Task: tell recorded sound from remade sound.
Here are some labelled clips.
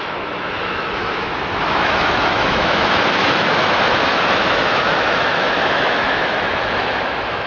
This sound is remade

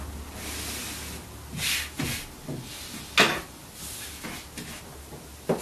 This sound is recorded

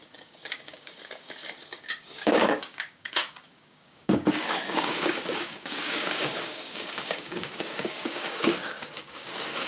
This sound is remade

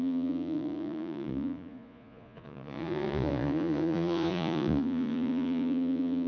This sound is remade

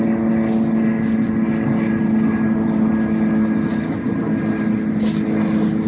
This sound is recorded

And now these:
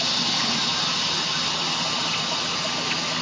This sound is remade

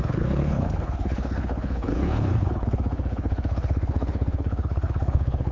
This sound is remade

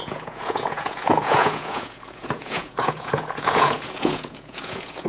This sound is remade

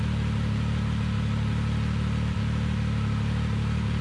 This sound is recorded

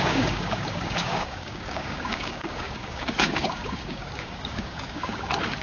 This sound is remade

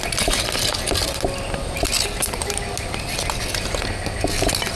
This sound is recorded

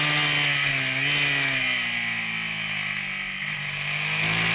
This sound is recorded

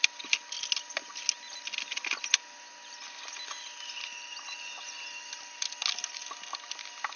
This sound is recorded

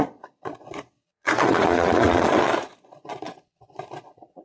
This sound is remade